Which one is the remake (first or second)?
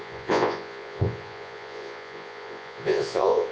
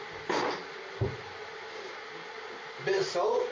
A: first